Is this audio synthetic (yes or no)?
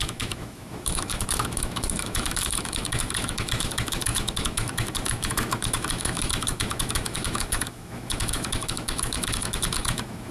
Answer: yes